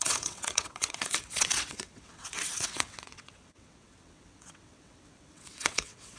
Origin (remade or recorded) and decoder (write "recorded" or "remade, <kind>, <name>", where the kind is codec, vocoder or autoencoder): remade, vocoder, WaveNeXt